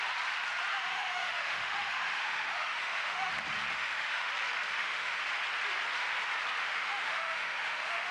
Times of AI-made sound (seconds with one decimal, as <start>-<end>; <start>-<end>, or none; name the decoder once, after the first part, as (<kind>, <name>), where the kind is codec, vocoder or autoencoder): 0.7-3.3 (autoencoder, DAC-VAE); 3.7-4.3; 4.7-5.2; 6.6-8.1

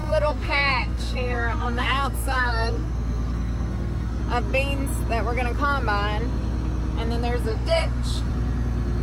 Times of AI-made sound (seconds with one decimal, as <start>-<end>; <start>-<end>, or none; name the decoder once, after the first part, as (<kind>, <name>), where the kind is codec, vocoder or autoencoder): 0.0-4.2 (codec, SNAC); 7.5-8.3

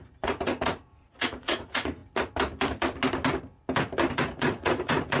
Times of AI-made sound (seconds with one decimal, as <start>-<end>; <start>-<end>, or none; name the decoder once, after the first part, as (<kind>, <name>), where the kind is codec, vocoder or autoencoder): 0.0-2.0 (vocoder, Vocos); 4.1-5.2

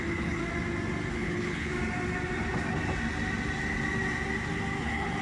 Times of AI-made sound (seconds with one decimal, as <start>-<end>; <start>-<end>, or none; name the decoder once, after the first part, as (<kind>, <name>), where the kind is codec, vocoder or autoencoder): 0.0-0.4 (codec, HILCodec); 1.1-1.7; 4.8-5.2

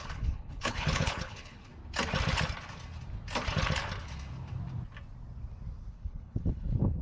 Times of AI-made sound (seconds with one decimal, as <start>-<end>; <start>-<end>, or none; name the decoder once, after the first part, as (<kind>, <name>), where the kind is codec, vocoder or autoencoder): 0.0-1.7 (codec, HILCodec); 5.9-7.0